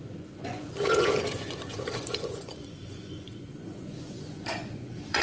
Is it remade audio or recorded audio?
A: remade